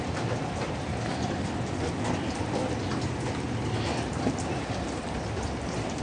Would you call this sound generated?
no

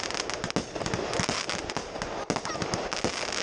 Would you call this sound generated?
no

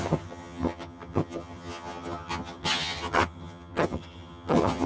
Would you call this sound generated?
yes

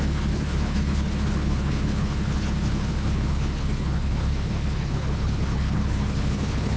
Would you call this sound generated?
yes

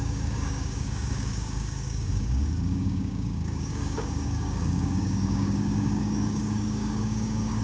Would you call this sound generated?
yes